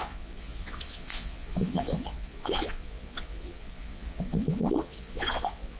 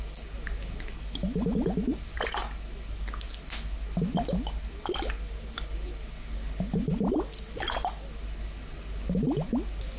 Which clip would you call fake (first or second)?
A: first